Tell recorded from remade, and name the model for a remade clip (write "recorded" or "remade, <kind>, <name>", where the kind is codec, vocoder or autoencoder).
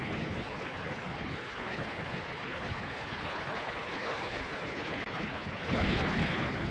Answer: remade, codec, HILCodec